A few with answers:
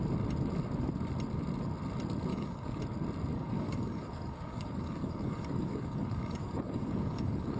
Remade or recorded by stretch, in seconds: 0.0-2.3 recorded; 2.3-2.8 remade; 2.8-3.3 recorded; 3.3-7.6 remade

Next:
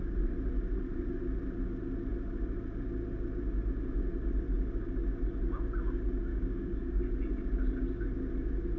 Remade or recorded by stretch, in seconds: 0.0-6.3 recorded; 6.3-7.0 remade; 7.0-8.8 recorded

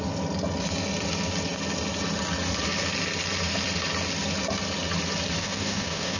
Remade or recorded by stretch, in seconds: 0.0-5.4 recorded; 5.4-6.2 remade